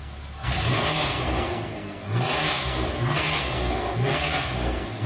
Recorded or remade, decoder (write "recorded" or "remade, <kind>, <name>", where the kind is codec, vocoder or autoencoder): remade, codec, SNAC